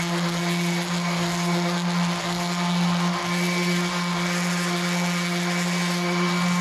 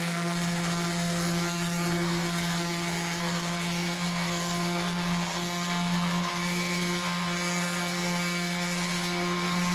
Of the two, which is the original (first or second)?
first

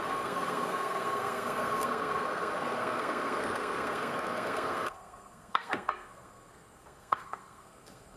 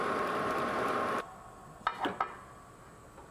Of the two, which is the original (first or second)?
second